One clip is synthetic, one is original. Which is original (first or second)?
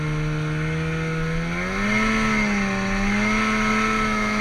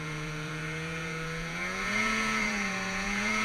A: first